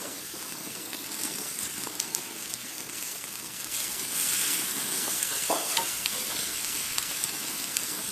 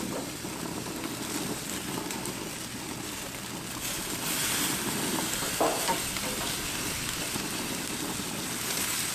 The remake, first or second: first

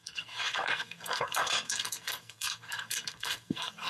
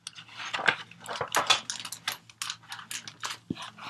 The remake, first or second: first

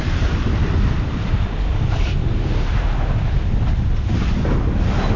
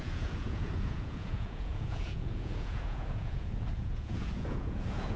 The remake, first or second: second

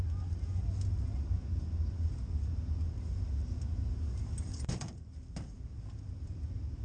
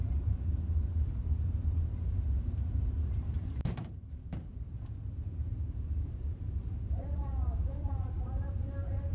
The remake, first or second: second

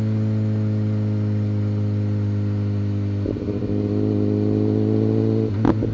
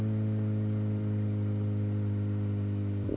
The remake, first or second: second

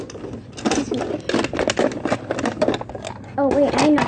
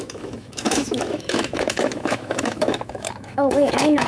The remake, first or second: second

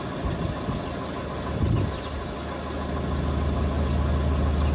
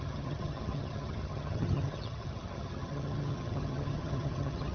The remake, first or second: second